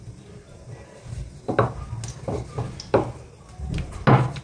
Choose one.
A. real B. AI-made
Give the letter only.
A